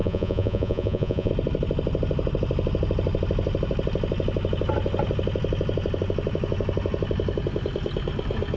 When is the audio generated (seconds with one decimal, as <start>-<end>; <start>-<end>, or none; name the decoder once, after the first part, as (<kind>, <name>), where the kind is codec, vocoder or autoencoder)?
0.0-1.3 (vocoder, Vocos)